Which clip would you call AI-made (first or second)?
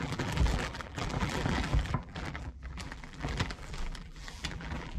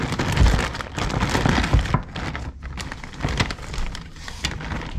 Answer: first